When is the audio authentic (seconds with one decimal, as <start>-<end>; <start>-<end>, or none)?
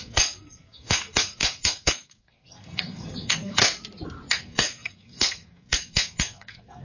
3.6-4.3